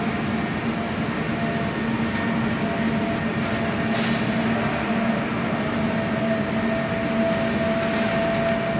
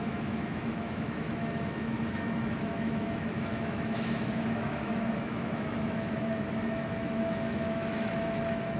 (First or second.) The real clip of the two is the first